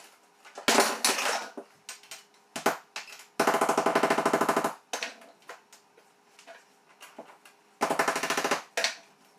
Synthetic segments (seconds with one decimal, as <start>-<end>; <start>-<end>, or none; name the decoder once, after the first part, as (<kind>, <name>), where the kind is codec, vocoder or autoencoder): none